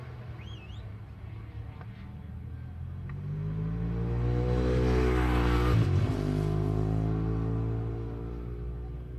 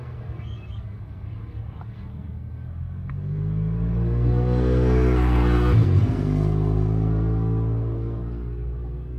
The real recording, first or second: first